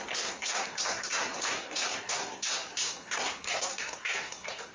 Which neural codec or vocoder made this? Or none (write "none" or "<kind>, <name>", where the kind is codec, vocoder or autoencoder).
codec, SNAC